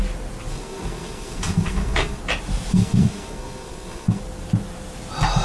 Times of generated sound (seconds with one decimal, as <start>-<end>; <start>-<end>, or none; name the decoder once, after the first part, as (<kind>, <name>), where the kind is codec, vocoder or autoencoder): 0.5-2.2 (codec, SNAC); 2.7-4.2

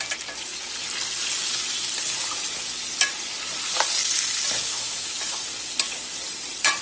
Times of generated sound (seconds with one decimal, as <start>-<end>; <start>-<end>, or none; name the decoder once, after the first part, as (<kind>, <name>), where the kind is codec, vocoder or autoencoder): 4.7-5.4 (autoencoder, DAC-VAE)

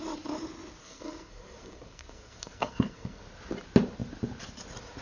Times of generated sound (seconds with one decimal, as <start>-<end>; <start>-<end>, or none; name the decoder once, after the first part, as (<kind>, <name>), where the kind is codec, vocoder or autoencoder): 0.8-3.2 (codec, SNAC)

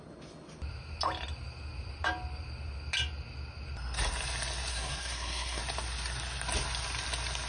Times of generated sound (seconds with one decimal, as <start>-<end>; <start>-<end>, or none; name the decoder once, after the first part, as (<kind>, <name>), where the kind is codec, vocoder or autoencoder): 4.7-5.6 (codec, SNAC)

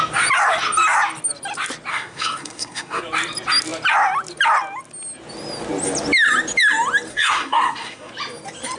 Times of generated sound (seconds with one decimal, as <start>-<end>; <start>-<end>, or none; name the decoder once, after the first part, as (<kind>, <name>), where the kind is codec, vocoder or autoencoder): 1.9-3.0 (codec, SNAC); 7.1-8.1